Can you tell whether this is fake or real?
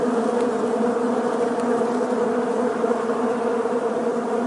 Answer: real